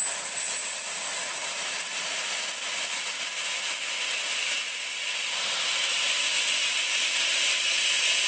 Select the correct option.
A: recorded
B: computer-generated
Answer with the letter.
A